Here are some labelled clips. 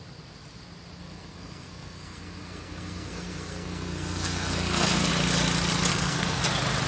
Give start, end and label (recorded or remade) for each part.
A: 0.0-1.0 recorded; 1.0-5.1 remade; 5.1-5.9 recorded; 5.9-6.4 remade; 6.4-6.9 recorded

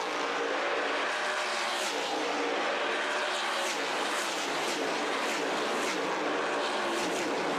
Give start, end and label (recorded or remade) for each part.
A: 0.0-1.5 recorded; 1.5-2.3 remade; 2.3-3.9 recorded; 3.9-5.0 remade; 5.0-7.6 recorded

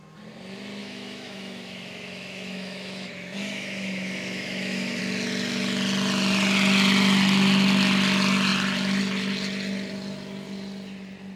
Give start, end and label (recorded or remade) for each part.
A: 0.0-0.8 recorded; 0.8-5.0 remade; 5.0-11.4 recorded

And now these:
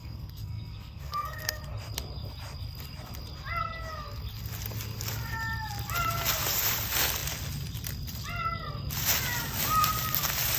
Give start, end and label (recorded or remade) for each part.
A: 0.0-1.6 remade; 1.6-10.6 recorded